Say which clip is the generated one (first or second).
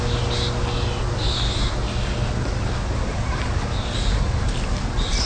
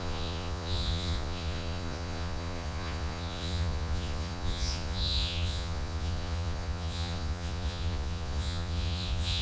second